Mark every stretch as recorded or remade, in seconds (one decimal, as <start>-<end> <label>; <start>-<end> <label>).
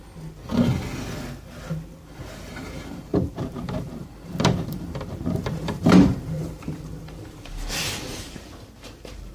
0.0-2.5 recorded; 2.5-9.3 remade